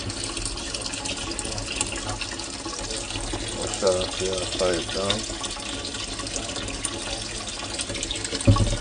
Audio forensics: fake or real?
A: real